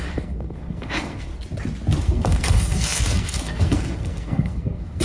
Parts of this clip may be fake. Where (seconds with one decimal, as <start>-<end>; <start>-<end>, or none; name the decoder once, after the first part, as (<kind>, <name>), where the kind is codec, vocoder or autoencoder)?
0.0-1.3 (codec, SNAC); 2.0-5.0